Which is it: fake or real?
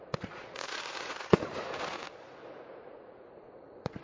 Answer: fake